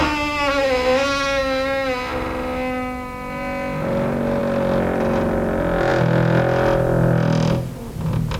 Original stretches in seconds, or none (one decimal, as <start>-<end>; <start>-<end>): 0.0-8.4